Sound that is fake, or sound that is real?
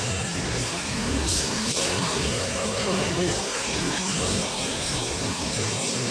fake